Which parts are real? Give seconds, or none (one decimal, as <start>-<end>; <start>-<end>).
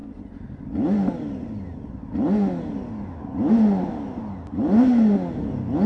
0.0-5.9